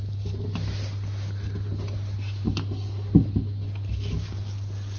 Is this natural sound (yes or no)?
yes